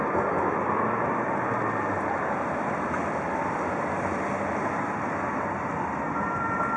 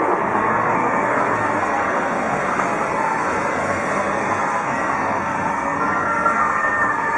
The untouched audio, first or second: first